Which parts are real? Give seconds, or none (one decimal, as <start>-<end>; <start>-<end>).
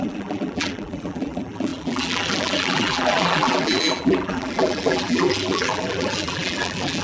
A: none